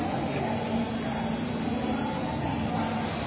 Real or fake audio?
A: real